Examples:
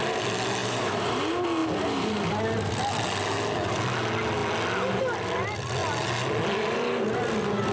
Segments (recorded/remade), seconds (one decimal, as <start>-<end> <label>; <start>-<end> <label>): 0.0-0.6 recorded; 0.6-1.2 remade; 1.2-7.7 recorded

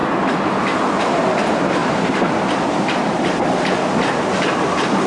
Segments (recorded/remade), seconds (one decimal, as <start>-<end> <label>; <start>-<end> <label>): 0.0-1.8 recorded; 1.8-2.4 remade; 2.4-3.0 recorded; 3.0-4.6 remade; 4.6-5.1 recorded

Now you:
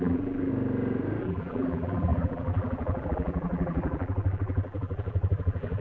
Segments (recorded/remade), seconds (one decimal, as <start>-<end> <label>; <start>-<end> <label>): 0.0-0.5 remade; 0.5-1.2 recorded; 1.2-5.8 remade

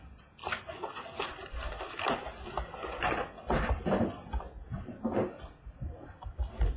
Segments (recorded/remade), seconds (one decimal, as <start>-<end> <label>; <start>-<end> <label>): 0.0-6.8 recorded